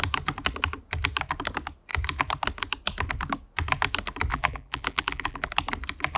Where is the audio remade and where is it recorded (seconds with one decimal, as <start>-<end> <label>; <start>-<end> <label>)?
0.0-4.3 recorded; 4.3-5.5 remade; 5.5-6.2 recorded